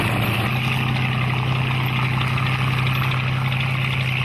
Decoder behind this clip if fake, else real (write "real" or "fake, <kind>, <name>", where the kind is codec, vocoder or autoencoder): real